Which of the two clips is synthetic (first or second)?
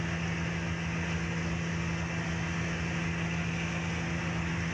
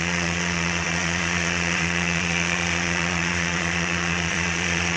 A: second